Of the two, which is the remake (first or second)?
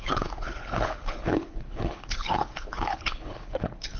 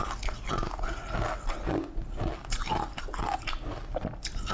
first